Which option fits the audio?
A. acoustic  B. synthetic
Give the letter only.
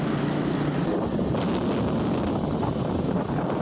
A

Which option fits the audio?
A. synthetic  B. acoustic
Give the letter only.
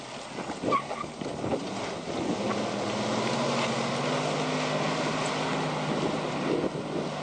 B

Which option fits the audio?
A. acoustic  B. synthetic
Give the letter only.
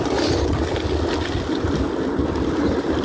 A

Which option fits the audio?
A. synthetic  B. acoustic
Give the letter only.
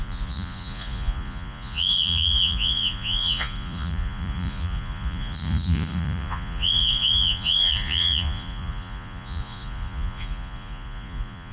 A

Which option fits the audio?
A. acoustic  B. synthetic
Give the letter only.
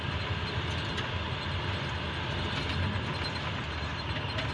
A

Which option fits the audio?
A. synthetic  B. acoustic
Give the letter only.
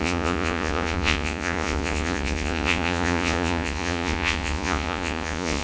A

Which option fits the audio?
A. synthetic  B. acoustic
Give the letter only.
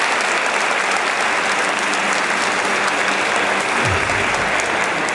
B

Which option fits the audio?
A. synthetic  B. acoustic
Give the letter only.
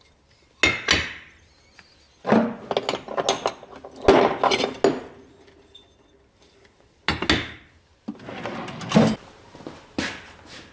B